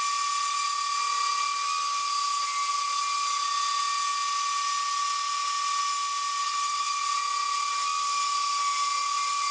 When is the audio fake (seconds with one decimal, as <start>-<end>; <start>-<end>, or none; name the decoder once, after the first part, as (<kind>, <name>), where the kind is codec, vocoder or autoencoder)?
6.4-7.0 (vocoder, HiFi-GAN)